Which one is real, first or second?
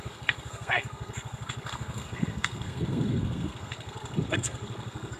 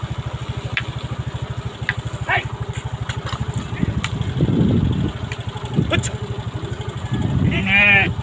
second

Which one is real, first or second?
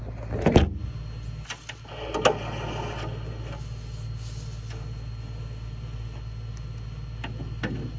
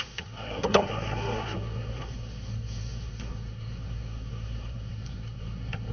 first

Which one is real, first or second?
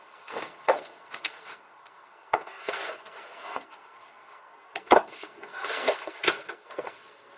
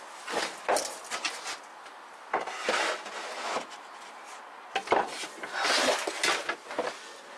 second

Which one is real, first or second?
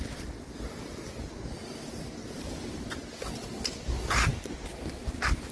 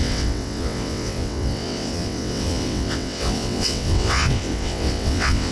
first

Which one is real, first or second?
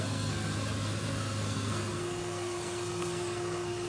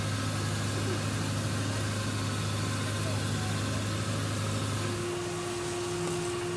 second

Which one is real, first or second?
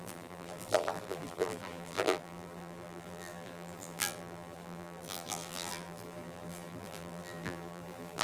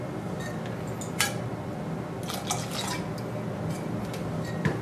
second